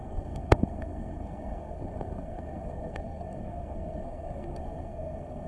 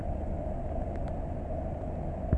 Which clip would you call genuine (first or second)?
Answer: second